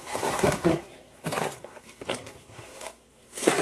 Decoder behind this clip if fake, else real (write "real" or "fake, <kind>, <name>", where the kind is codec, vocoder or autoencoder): fake, codec, SNAC